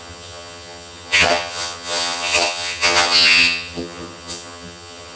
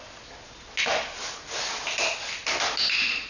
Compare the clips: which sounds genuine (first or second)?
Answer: second